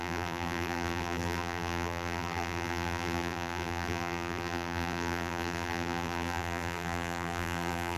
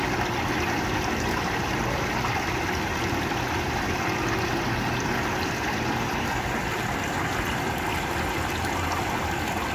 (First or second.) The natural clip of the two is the second